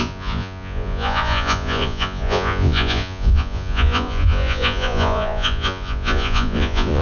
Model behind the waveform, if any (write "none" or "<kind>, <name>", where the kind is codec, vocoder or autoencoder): vocoder, Vocos